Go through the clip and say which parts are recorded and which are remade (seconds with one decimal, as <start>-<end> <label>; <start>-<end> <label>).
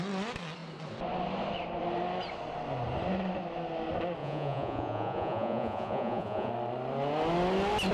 0.0-4.2 recorded; 4.2-6.5 remade; 6.5-7.9 recorded